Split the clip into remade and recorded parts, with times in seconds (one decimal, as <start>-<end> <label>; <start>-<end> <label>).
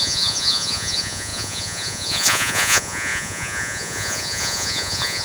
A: 0.0-5.2 remade